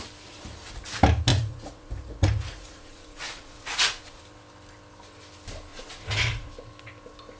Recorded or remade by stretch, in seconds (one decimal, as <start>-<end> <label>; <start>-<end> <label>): 0.0-1.3 recorded; 1.3-4.2 remade; 4.2-5.7 recorded; 5.7-6.5 remade; 6.5-7.4 recorded